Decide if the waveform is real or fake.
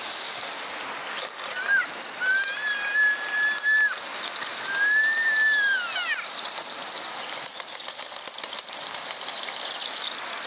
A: real